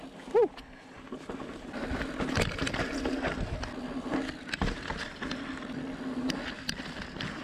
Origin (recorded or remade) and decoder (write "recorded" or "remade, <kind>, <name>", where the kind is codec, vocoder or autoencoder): recorded